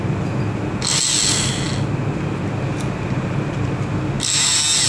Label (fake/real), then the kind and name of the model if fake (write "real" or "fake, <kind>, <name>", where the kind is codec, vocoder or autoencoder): real